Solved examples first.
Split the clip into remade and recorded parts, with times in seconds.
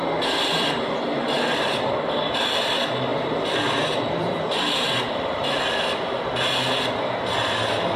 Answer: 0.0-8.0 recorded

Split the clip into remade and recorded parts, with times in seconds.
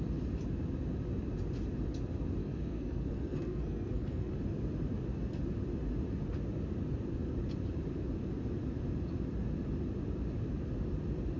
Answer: 0.0-2.4 recorded; 2.4-4.3 remade; 4.3-11.4 recorded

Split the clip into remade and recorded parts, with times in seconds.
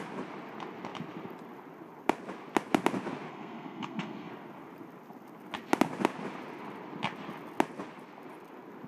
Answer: 0.0-3.3 recorded; 3.3-4.3 remade; 4.3-8.9 recorded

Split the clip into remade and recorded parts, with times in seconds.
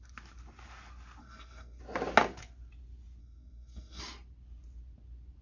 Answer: 0.0-1.2 recorded; 1.2-1.8 remade; 1.8-3.2 recorded; 3.2-4.0 remade; 4.0-5.4 recorded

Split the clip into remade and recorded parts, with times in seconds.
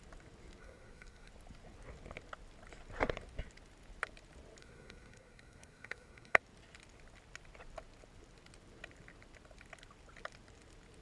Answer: 0.0-0.6 recorded; 0.6-1.3 remade; 1.3-4.6 recorded; 4.6-6.4 remade; 6.4-11.0 recorded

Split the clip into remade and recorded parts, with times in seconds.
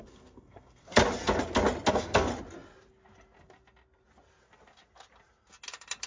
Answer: 0.0-1.0 remade; 1.0-1.9 recorded; 1.9-2.3 remade; 2.3-6.1 recorded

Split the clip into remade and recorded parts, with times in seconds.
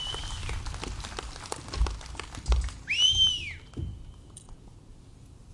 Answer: 0.0-5.5 recorded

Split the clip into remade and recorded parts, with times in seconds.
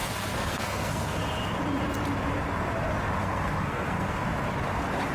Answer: 0.0-1.2 remade; 1.2-3.2 recorded; 3.2-4.2 remade; 4.2-5.1 recorded